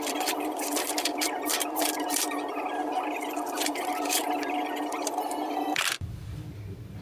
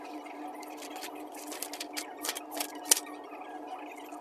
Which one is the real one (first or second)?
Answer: second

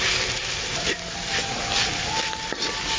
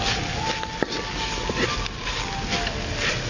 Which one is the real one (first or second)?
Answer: second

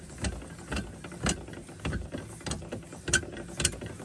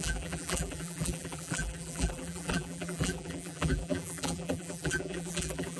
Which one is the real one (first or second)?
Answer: first